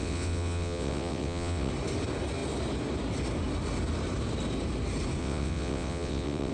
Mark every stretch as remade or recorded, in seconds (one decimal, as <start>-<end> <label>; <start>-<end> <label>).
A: 0.0-1.7 remade; 1.7-5.2 recorded; 5.2-6.5 remade